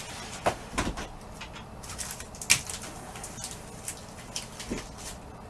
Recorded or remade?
recorded